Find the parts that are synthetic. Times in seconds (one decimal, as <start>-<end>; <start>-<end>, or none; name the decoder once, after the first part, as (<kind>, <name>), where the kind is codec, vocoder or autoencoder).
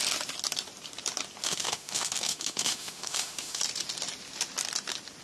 1.4-3.6 (autoencoder, DAC-VAE)